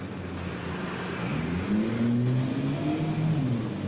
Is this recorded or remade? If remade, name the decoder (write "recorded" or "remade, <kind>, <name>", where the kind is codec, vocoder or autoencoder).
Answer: recorded